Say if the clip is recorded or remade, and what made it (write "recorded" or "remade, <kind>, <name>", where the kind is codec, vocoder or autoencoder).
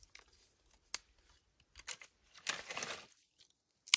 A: recorded